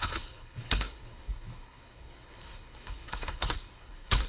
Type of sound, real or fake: fake